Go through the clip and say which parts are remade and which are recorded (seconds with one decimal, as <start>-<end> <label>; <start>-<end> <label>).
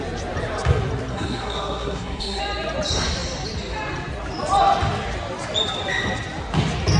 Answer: 0.0-1.1 recorded; 1.1-2.4 remade; 2.4-7.0 recorded